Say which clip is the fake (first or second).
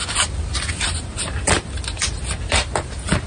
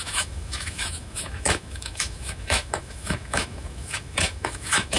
second